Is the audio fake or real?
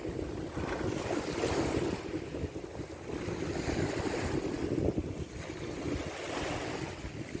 real